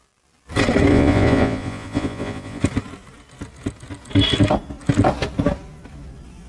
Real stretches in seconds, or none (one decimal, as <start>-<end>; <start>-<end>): 0.0-0.9; 2.6-6.5